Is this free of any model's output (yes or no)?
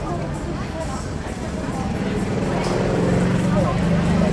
yes